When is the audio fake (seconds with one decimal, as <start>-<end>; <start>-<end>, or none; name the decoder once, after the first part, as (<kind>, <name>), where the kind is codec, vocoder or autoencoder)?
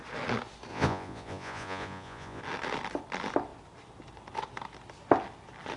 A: 0.7-2.4 (vocoder, Vocos)